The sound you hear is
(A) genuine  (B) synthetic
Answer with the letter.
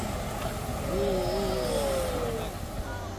A